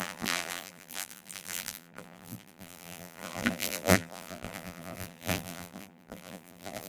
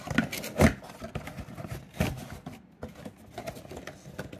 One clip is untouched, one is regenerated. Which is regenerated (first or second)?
first